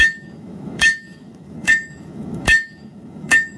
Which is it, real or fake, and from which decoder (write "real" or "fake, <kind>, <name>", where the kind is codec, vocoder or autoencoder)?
fake, autoencoder, DAC-VAE